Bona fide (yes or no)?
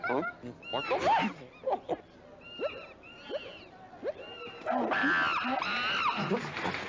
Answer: yes